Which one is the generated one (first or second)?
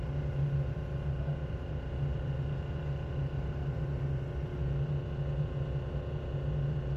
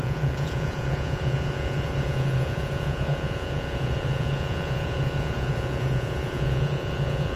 second